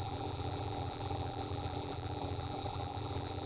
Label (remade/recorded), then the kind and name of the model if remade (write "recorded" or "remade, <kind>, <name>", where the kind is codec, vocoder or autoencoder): remade, vocoder, BigVGAN v2